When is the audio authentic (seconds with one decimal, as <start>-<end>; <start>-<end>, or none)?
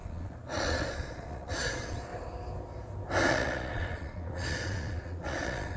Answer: 2.1-3.3